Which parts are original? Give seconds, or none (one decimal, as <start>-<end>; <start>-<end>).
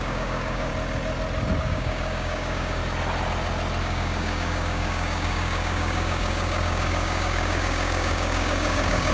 0.7-1.6; 2.8-3.8